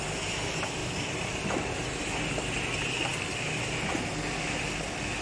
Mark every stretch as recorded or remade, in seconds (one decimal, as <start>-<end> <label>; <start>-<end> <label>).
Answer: 0.0-5.2 recorded